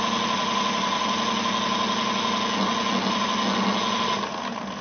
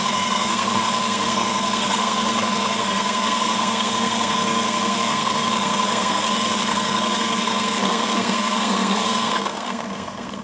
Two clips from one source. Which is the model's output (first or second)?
second